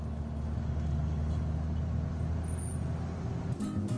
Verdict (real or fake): real